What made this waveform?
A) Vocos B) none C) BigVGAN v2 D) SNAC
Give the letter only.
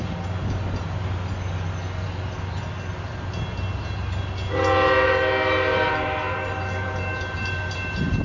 B